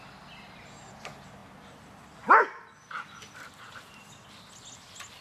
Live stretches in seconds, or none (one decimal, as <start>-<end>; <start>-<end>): 0.0-5.2